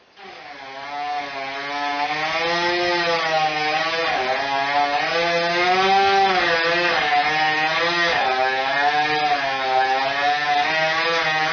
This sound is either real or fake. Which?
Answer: real